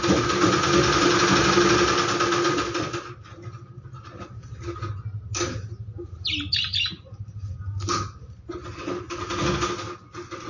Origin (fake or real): real